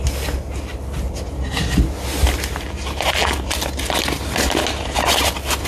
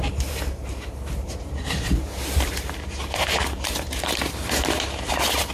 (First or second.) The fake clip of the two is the second